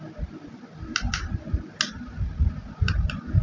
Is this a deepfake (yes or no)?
no